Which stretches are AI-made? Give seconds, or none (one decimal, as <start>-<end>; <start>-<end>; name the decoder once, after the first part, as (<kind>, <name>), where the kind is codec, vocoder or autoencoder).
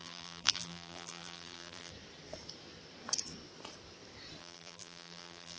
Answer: 0.0-1.9 (vocoder, BigVGAN v2); 4.4-5.6